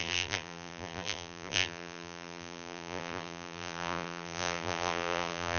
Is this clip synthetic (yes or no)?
yes